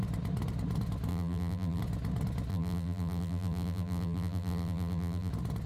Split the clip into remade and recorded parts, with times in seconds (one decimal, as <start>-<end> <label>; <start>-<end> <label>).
0.0-1.1 recorded; 1.1-1.8 remade; 1.8-2.5 recorded; 2.5-5.3 remade; 5.3-5.7 recorded